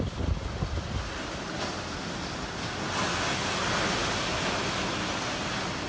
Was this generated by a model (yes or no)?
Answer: no